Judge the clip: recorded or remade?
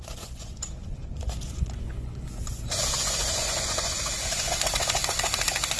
remade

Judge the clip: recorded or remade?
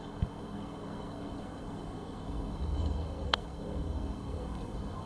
remade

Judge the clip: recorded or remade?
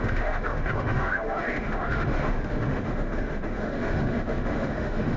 remade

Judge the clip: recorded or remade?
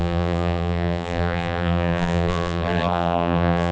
remade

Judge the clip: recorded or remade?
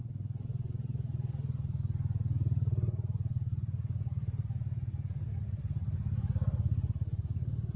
recorded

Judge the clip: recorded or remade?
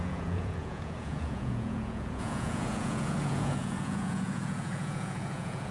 remade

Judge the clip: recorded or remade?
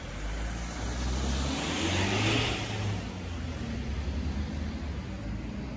recorded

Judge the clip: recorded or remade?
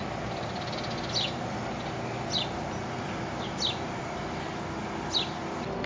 recorded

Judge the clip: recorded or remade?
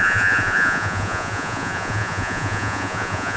remade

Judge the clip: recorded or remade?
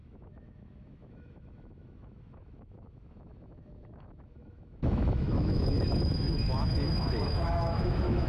remade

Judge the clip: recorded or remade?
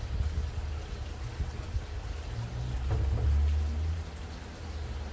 recorded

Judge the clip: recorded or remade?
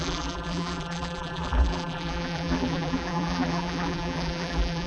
remade